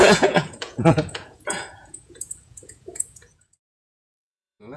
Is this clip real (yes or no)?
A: no